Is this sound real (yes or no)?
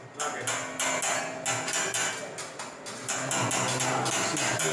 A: yes